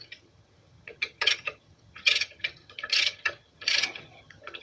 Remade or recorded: remade